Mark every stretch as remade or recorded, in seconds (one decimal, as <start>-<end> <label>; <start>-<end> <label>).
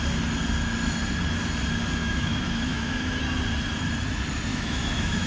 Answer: 0.0-2.0 recorded; 2.0-3.2 remade; 3.2-4.5 recorded; 4.5-5.3 remade